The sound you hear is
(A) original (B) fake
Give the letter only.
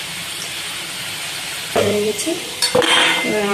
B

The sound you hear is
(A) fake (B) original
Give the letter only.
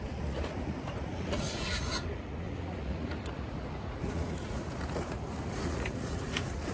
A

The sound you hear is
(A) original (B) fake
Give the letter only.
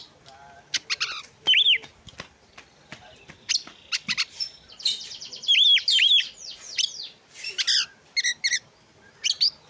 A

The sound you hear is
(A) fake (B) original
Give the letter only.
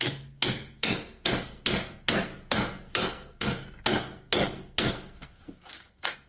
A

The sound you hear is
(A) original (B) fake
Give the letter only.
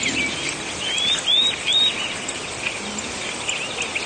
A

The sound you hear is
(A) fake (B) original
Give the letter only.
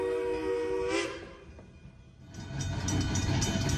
B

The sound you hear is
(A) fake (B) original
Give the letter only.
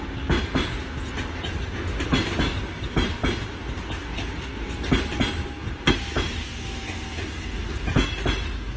B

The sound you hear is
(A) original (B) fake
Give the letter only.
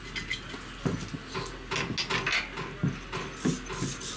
A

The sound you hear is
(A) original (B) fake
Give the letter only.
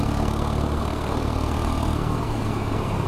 B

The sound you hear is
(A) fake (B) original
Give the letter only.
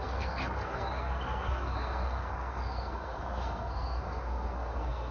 A